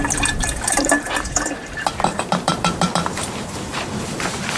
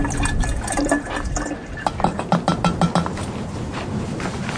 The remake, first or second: first